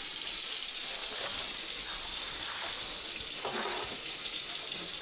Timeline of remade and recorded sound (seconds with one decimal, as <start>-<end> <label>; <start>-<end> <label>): 0.0-3.5 recorded; 3.5-4.5 remade; 4.5-5.0 recorded

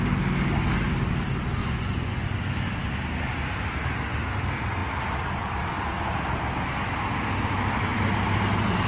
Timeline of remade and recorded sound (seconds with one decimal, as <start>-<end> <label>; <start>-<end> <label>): 0.0-1.6 recorded; 1.6-2.3 remade; 2.3-8.9 recorded

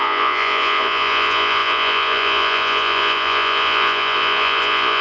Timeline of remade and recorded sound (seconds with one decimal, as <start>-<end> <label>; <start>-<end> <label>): 0.0-5.0 remade

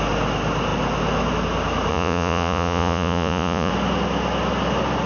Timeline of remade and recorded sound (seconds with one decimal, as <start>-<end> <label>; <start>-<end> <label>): 0.0-1.9 recorded; 1.9-3.7 remade; 3.7-5.1 recorded

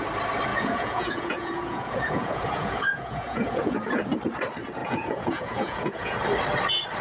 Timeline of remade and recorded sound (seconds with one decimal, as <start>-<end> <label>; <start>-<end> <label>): 0.0-0.5 recorded; 0.5-3.9 remade; 3.9-4.8 recorded; 4.8-6.2 remade; 6.2-7.0 recorded